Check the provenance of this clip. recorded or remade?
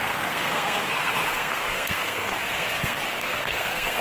remade